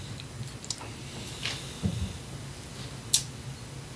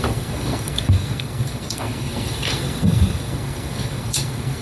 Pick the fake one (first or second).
second